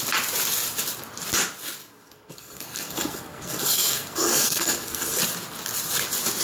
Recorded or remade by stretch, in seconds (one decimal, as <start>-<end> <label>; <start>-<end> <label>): 0.0-1.8 recorded; 1.8-5.2 remade; 5.2-6.4 recorded